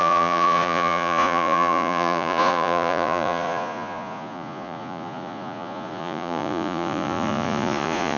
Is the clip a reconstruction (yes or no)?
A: yes